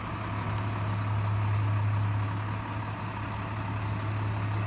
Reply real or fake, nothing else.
real